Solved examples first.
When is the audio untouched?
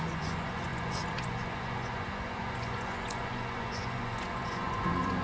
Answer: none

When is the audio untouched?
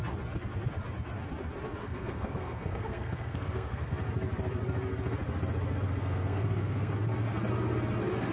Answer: 0.0-1.8; 3.9-6.0; 6.9-8.3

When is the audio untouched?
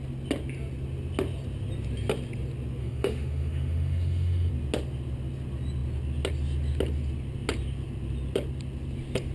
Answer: 0.0-2.8; 4.5-9.3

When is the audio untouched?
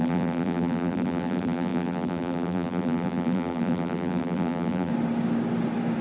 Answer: 4.9-6.0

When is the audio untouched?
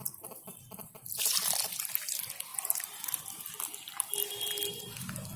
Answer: 0.0-2.5; 3.2-5.4